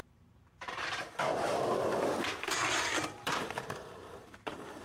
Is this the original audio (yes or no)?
no